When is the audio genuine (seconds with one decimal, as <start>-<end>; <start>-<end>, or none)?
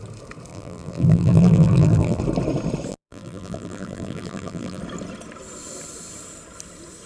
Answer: 0.0-0.5; 2.2-2.9; 4.8-7.1